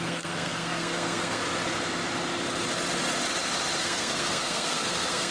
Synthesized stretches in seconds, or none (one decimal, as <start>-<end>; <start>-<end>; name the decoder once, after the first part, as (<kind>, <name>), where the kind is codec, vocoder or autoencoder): 0.0-1.4 (codec, SNAC); 3.8-5.3